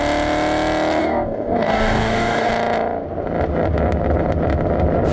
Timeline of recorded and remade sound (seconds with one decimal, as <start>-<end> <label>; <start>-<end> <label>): 0.0-1.0 recorded; 1.0-2.5 remade; 2.5-5.1 recorded